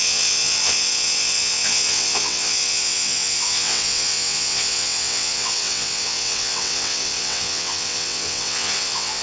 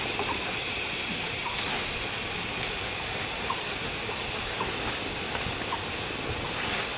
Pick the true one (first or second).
second